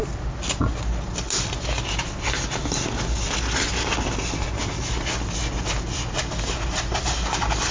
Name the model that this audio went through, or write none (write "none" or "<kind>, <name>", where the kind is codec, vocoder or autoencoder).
none